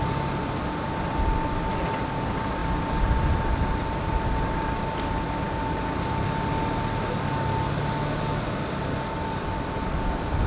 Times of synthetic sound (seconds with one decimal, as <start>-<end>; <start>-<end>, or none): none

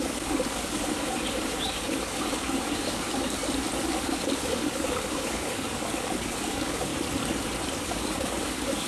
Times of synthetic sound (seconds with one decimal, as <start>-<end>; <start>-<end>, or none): 0.0-3.4; 4.0-6.9; 7.8-8.9

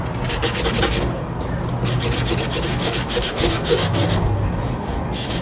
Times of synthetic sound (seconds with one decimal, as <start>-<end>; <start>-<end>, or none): 0.9-1.4; 2.7-5.4

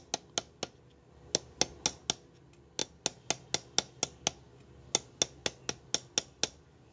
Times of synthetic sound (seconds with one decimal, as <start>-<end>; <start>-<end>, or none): none

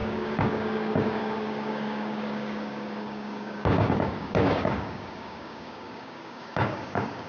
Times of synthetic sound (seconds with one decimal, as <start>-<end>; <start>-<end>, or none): 0.0-7.3

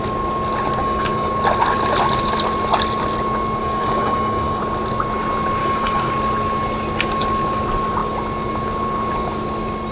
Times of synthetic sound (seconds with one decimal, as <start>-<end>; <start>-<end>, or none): 0.8-1.3; 3.6-4.6; 5.6-6.1

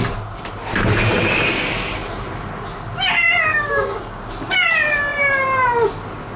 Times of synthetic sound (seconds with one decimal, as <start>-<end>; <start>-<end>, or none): 3.5-4.3

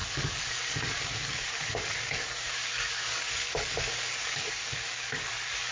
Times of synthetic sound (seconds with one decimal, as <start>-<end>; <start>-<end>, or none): 0.0-5.7